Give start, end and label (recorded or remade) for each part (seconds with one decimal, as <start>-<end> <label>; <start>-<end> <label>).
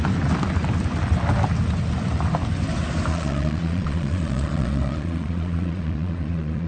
0.0-3.1 recorded; 3.1-6.7 remade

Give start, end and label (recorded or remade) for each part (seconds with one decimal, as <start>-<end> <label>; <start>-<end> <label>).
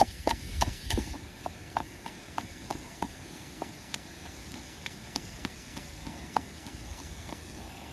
0.0-7.9 remade